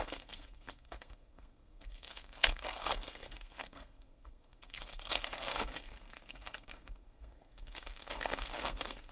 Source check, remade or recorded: remade